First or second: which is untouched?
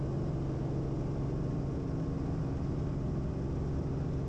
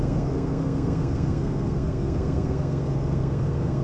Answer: first